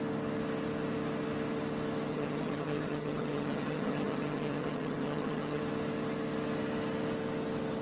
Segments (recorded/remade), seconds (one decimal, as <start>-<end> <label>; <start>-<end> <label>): 0.0-2.1 recorded; 2.1-5.6 remade; 5.6-7.8 recorded